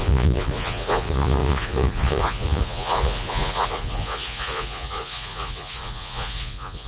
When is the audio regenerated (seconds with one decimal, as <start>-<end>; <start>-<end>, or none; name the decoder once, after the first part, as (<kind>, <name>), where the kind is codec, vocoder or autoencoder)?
0.0-6.9 (vocoder, Vocos)